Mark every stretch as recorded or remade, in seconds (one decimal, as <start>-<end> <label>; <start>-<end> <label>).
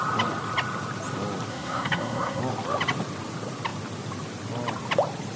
0.0-1.5 recorded; 1.5-2.4 remade; 2.4-5.4 recorded